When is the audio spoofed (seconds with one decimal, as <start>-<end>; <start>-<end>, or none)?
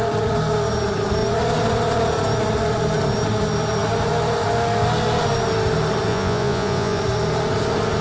6.1-7.0